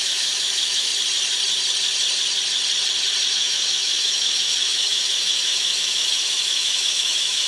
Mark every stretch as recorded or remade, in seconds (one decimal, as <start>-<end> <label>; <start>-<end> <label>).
0.0-0.9 remade; 0.9-3.3 recorded; 3.3-7.5 remade